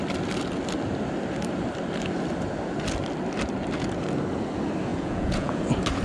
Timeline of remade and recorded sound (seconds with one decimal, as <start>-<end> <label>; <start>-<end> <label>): 0.0-4.9 recorded; 4.9-5.6 remade; 5.6-6.0 recorded